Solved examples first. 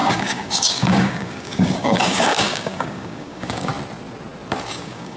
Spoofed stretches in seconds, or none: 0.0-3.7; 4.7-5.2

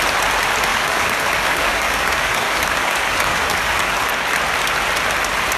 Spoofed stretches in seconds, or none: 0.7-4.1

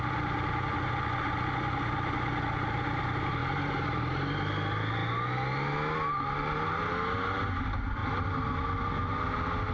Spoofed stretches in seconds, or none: none

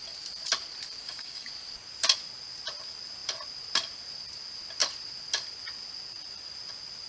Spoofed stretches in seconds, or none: 1.0-1.5